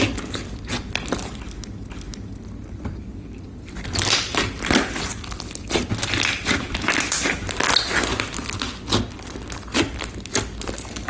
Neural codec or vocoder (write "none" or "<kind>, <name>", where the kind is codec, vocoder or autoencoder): none